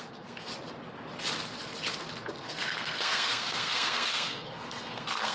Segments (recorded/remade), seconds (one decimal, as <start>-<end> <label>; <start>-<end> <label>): 0.0-0.5 remade; 0.5-2.4 recorded; 2.4-5.3 remade